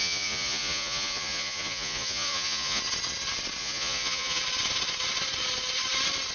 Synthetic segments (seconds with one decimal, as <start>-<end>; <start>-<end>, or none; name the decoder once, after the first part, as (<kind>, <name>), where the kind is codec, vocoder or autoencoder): 0.0-2.8 (vocoder, Vocos); 3.6-4.4